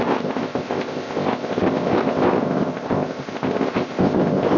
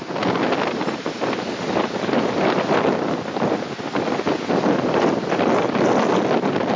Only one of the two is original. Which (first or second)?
second